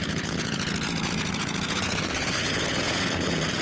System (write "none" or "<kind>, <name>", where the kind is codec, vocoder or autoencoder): vocoder, Vocos